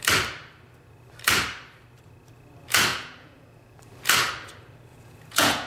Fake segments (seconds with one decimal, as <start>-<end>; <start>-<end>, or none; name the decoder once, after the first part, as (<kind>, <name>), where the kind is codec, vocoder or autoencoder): 2.9-3.8 (vocoder, Vocos); 4.9-5.7